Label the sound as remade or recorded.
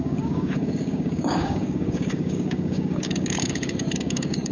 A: remade